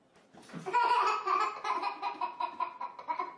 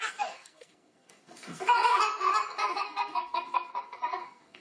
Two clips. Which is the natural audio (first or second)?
first